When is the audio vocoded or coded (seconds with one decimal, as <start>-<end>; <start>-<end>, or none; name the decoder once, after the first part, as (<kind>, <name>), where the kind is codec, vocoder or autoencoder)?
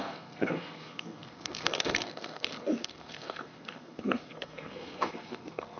0.0-5.8 (codec, SNAC)